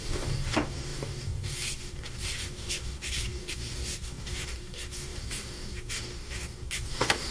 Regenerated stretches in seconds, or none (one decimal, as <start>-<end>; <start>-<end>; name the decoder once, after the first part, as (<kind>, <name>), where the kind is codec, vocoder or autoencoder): 0.0-7.3 (codec, DAC)